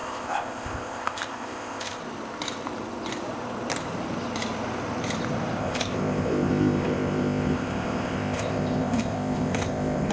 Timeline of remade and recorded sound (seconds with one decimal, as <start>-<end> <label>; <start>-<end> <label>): 0.0-2.0 remade; 2.0-5.6 recorded; 5.6-10.1 remade

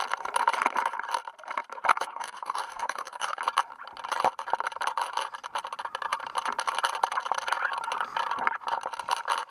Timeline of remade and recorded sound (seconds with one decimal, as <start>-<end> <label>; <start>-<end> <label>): 0.0-1.9 recorded; 1.9-3.4 remade; 3.4-9.5 recorded

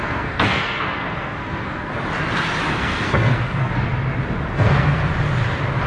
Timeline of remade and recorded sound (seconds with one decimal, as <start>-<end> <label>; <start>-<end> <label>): 0.0-1.9 remade; 1.9-2.7 recorded; 2.7-3.7 remade; 3.7-4.5 recorded; 4.5-5.0 remade; 5.0-5.9 recorded

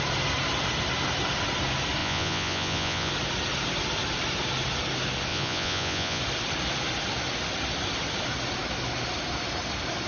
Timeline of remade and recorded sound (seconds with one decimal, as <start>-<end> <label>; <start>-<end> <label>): 0.0-2.0 recorded; 2.0-3.1 remade; 3.1-5.3 recorded; 5.3-6.2 remade; 6.2-10.1 recorded

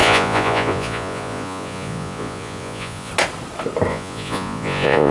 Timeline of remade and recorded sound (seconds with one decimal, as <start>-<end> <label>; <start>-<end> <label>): 0.0-3.1 remade; 3.1-3.9 recorded; 3.9-5.1 remade

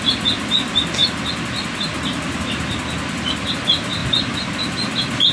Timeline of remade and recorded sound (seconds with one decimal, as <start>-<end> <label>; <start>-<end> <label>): 0.0-5.3 recorded